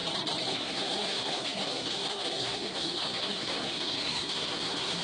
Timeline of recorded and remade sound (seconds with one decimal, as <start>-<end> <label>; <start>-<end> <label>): 0.0-0.5 recorded; 0.5-5.0 remade